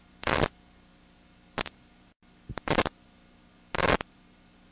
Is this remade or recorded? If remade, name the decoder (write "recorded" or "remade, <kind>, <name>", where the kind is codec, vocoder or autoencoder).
recorded